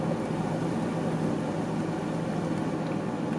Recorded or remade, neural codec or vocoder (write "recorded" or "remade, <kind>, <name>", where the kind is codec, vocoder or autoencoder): recorded